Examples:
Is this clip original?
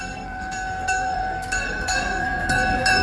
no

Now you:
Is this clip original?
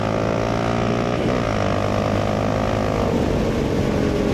yes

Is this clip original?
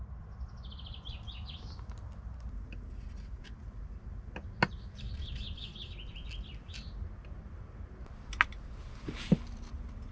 yes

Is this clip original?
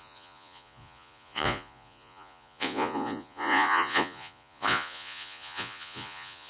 no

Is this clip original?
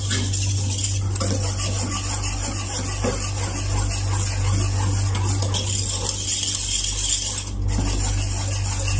yes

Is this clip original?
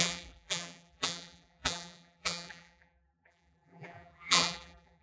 no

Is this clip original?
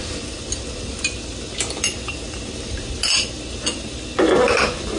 yes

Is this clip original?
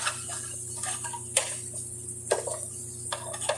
yes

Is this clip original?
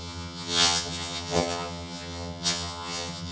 no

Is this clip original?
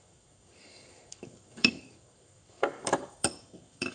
no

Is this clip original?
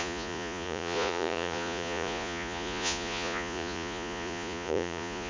no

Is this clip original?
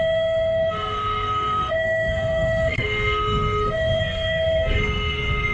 no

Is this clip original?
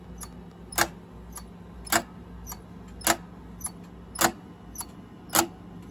yes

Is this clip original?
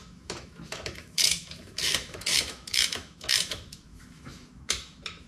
no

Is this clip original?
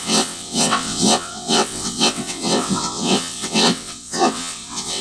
no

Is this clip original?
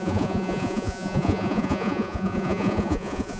no